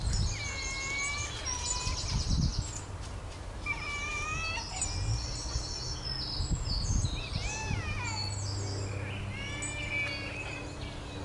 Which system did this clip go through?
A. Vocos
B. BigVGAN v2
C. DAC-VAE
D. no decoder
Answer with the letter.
D